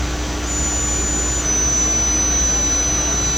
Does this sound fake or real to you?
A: real